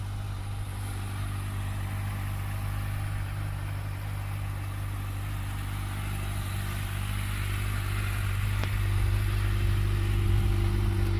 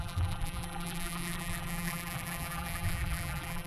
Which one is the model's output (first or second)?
second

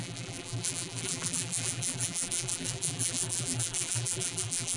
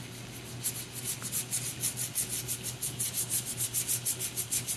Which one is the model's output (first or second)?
first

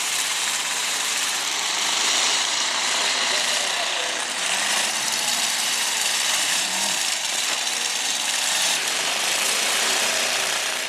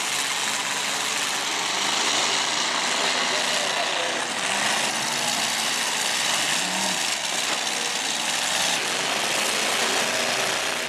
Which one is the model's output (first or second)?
first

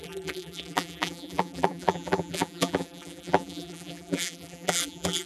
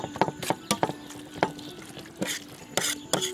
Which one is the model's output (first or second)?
first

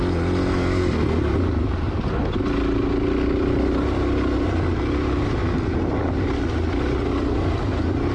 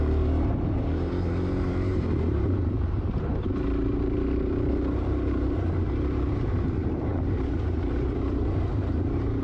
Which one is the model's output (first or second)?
second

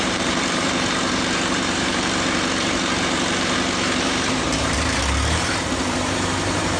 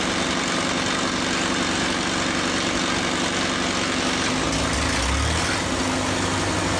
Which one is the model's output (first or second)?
first